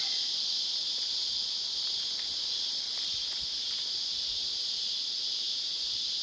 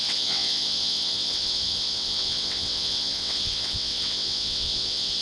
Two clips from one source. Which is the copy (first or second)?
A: second